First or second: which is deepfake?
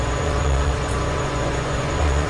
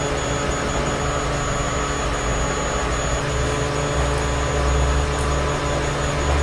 first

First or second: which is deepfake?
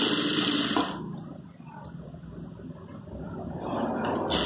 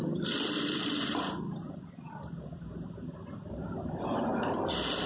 second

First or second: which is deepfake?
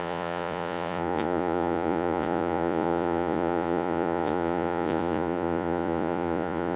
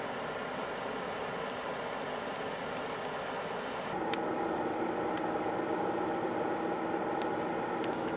first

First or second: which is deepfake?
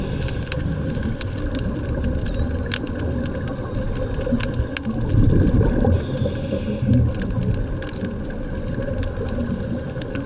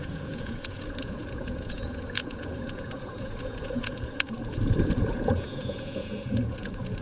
second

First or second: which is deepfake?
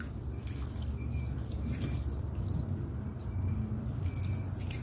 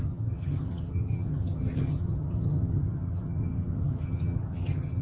second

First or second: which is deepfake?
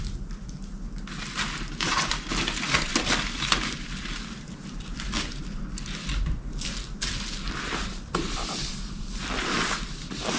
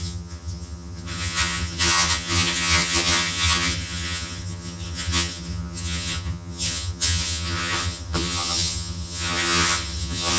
second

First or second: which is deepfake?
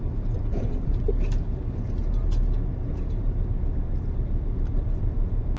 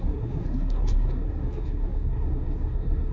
second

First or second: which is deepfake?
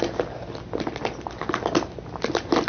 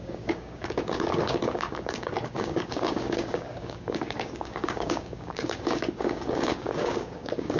second